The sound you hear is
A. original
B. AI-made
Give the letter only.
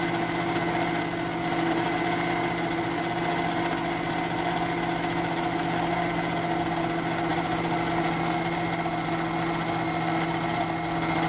A